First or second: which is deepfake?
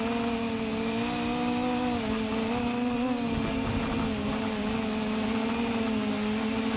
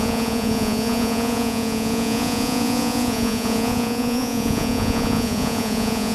second